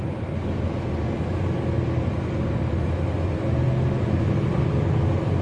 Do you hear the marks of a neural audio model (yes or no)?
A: no